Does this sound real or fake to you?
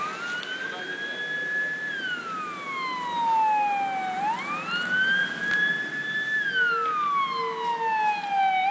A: real